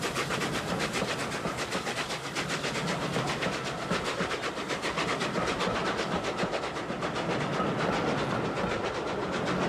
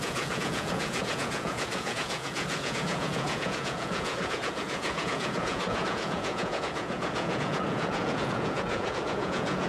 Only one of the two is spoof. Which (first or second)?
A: second